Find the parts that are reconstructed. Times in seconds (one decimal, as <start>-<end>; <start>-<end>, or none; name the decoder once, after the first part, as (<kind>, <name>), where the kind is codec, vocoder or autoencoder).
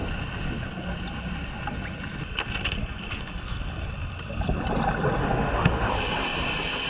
5.2-5.9 (autoencoder, DAC-VAE)